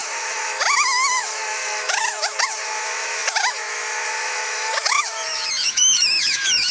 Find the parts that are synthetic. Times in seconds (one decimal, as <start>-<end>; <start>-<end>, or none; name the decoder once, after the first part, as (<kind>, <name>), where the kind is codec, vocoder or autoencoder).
0.0-6.7 (autoencoder, DAC-VAE)